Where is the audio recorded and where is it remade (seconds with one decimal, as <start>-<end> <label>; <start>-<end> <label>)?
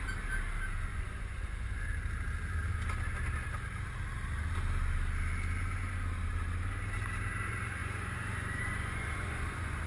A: 0.0-0.9 recorded; 0.9-1.9 remade; 1.9-7.8 recorded; 7.8-9.9 remade